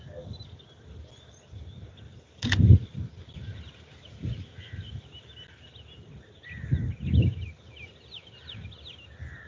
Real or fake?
real